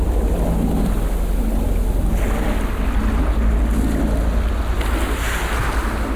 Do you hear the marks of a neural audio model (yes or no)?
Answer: no